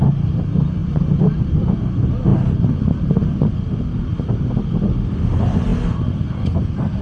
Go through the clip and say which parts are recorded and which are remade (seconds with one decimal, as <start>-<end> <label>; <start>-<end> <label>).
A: 0.0-0.8 recorded; 0.8-1.6 remade; 1.6-7.0 recorded